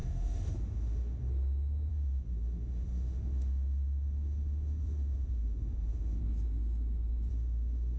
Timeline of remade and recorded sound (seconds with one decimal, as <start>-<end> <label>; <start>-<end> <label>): 0.0-1.3 remade; 1.3-1.9 recorded; 1.9-6.2 remade; 6.2-7.3 recorded; 7.3-8.0 remade